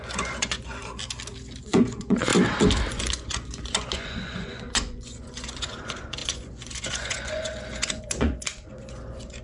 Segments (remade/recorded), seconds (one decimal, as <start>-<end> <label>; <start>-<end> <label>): 0.0-0.8 remade; 0.8-1.6 recorded; 1.6-2.3 remade; 2.3-2.9 recorded; 2.9-9.4 remade